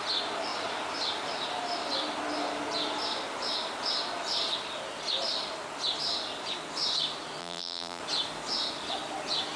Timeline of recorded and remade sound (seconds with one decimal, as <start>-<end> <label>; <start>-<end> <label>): 0.0-7.4 recorded; 7.4-8.0 remade; 8.0-9.6 recorded